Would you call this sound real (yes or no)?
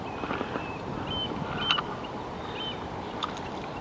yes